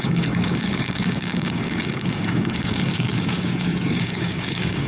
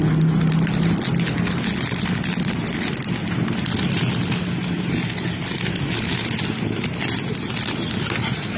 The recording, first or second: second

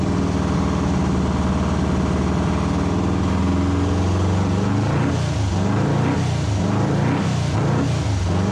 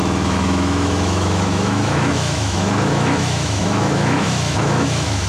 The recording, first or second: first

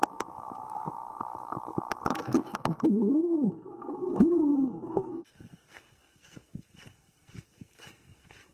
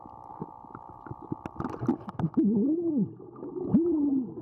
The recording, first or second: second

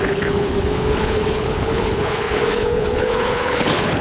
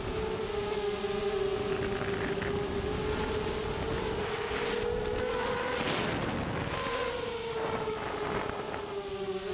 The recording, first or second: second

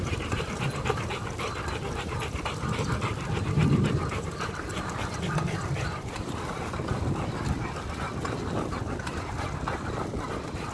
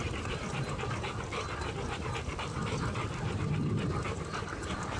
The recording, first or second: second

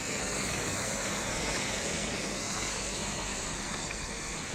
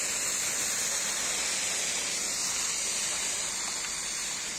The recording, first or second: second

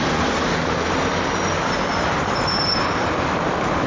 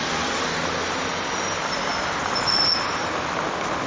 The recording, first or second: second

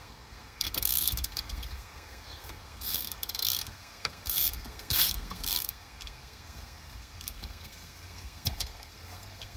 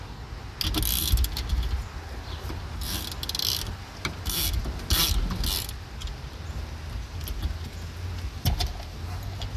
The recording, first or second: second